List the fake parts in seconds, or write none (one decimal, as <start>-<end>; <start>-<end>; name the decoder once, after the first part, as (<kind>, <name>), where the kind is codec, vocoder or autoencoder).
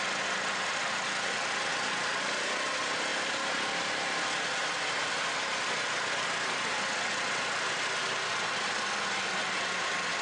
none